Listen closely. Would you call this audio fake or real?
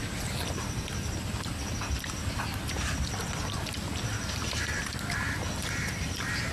real